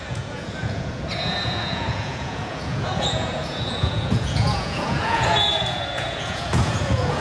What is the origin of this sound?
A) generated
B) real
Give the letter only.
A